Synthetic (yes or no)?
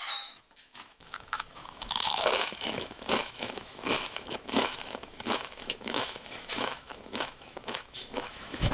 yes